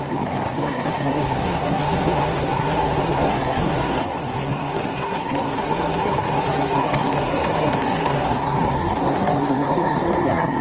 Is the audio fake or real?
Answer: fake